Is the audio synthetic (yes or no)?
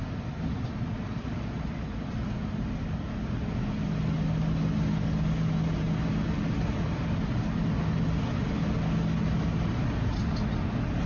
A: no